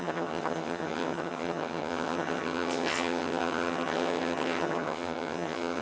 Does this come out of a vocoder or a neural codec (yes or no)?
yes